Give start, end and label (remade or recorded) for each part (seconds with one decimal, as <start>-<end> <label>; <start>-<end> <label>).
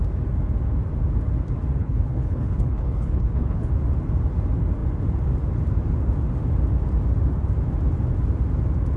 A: 0.0-1.8 recorded; 1.8-3.7 remade; 3.7-9.0 recorded